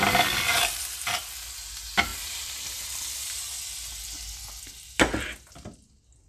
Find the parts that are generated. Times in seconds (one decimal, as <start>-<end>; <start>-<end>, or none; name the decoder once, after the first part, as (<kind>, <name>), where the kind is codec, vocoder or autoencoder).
0.5-1.2 (vocoder, BigVGAN v2); 2.1-2.9